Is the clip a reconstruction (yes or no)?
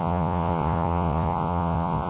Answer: yes